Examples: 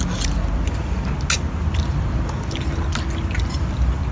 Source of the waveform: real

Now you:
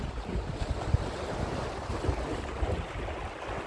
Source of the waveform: real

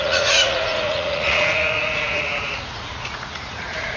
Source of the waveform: fake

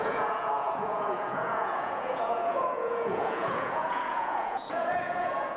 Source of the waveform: fake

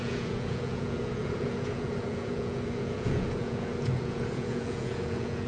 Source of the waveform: fake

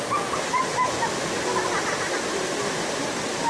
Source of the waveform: real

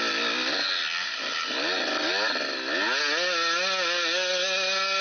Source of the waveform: real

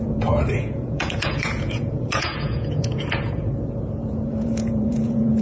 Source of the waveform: fake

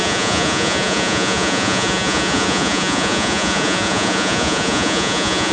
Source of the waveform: fake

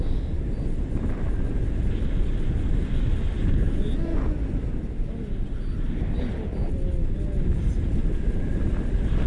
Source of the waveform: real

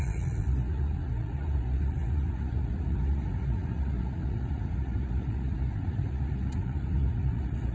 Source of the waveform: fake